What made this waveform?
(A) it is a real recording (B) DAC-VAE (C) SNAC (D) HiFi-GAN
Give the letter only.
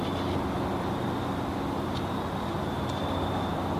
A